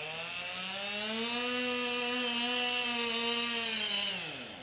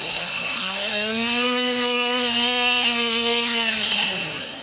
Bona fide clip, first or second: first